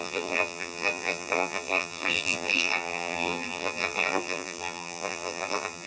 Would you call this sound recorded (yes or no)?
no